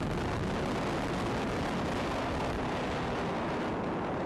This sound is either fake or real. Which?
real